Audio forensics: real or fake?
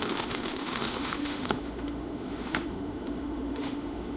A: fake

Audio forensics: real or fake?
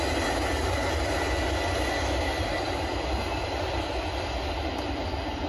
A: real